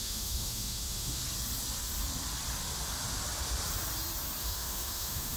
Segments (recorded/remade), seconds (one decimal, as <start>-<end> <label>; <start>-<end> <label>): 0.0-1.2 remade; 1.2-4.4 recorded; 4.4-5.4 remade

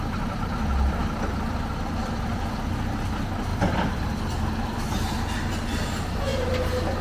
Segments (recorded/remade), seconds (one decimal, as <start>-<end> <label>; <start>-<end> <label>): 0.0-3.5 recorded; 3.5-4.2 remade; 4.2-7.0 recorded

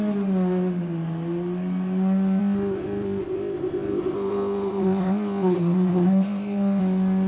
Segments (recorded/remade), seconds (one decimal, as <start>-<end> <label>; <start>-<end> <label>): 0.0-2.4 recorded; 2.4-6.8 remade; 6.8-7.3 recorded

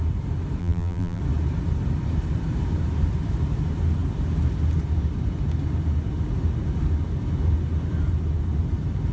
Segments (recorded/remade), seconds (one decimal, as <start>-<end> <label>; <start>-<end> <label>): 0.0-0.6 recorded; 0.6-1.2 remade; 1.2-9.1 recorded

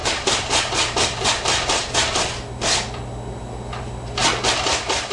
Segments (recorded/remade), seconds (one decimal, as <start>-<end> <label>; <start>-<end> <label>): 0.0-1.8 remade; 1.8-5.1 recorded

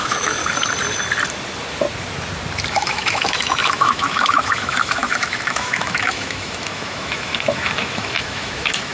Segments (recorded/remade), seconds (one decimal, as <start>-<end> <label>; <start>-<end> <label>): 0.0-0.4 remade; 0.4-2.7 recorded; 2.7-8.9 remade

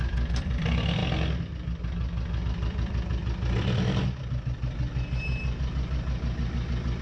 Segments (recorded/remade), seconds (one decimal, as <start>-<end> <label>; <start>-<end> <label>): 0.0-1.0 remade; 1.0-2.4 recorded; 2.4-3.2 remade; 3.2-7.0 recorded